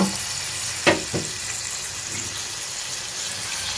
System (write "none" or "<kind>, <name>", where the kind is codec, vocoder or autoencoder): none